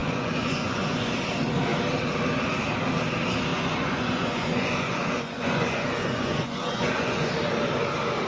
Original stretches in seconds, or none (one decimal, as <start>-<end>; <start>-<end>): 1.1-3.5; 7.3-8.3